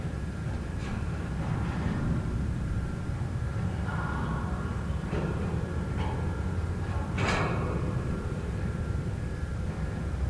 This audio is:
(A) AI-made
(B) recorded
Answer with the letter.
A